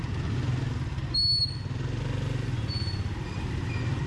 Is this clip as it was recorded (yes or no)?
yes